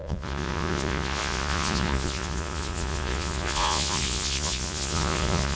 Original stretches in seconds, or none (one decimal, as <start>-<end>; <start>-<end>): none